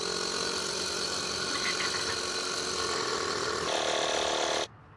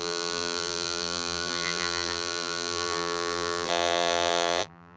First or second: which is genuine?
first